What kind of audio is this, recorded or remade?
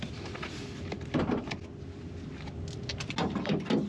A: recorded